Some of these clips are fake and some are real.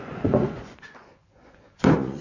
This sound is fake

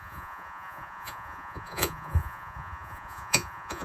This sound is fake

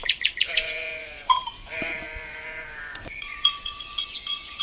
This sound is fake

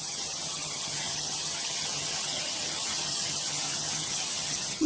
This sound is fake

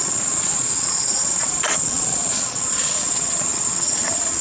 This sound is fake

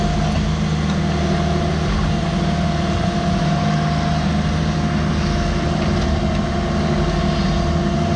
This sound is real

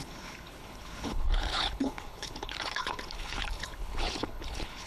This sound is fake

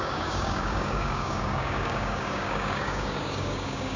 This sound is fake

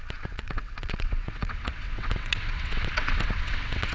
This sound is fake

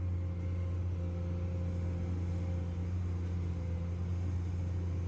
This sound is real